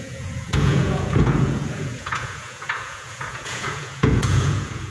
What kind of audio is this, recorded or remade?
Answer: remade